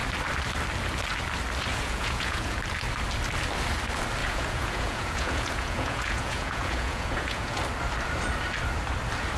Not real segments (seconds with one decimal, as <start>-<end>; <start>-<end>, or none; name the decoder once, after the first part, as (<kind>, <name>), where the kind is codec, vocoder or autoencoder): 1.7-2.6 (vocoder, Vocos); 4.2-7.6